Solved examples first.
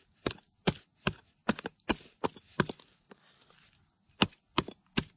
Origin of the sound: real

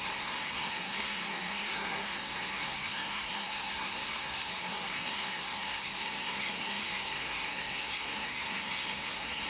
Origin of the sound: fake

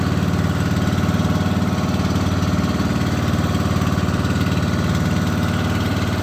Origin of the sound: real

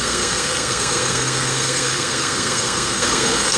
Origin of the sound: fake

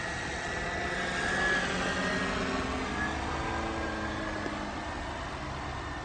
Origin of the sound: real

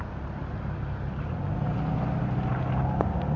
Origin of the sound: real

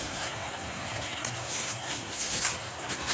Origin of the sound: fake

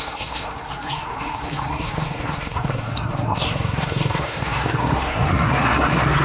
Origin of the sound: fake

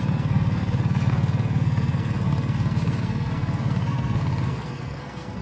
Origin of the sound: fake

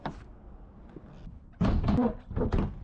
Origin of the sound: real